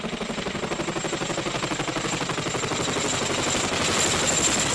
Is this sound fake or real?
real